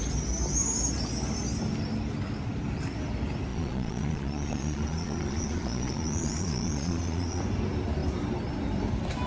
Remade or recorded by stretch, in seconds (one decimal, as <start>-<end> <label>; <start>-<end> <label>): 0.0-3.5 recorded; 3.5-7.4 remade; 7.4-9.3 recorded